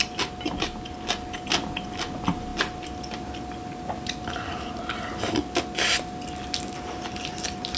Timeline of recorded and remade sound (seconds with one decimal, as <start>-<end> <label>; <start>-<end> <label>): 0.0-7.8 recorded